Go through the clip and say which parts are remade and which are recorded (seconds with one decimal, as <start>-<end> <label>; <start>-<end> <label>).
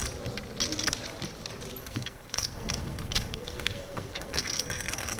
0.0-1.8 recorded; 1.8-5.2 remade